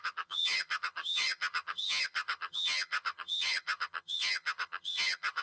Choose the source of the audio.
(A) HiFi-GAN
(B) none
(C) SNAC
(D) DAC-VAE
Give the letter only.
A